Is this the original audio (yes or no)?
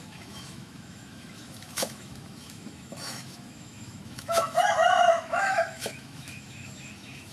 no